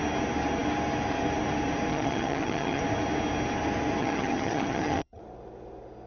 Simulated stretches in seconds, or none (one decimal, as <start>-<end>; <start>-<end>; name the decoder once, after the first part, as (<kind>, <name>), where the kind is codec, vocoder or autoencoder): 1.9-2.8 (vocoder, HiFi-GAN); 4.0-5.2